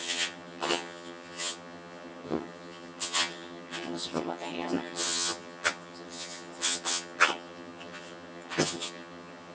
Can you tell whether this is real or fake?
fake